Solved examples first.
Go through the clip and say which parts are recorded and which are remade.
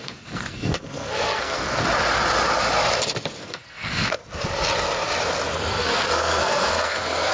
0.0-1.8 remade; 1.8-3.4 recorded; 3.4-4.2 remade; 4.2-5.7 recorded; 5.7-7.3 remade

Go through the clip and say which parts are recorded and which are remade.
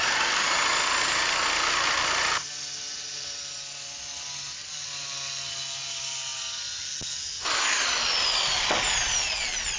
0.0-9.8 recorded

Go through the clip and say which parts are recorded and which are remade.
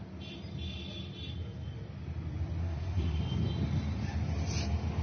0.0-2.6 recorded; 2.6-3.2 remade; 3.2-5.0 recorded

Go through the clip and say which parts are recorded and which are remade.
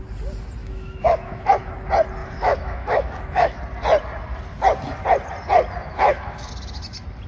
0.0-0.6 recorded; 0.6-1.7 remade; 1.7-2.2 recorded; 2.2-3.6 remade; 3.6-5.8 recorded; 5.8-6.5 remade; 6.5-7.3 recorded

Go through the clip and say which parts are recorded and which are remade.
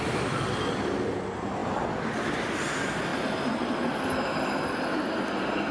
0.0-5.7 recorded